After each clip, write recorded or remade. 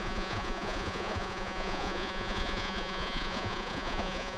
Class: remade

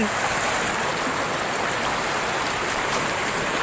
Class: recorded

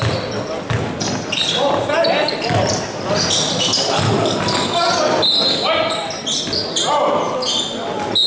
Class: recorded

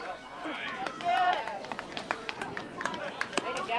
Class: remade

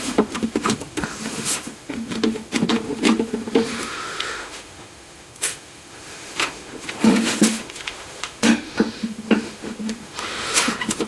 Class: remade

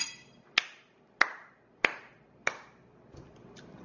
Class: recorded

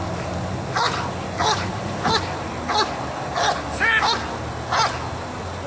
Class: recorded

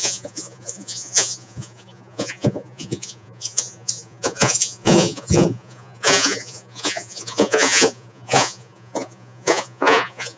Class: remade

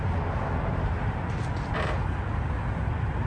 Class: recorded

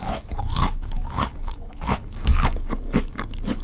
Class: remade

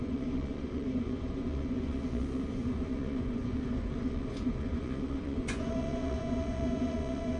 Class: remade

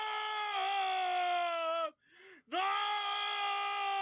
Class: recorded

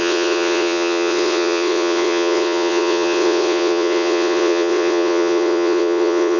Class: remade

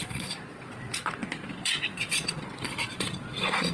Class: remade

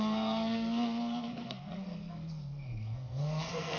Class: remade